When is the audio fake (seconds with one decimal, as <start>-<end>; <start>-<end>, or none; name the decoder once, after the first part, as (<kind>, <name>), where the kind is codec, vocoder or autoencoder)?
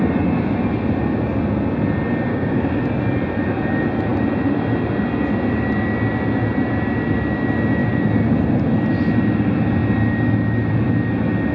2.3-2.8 (codec, DAC)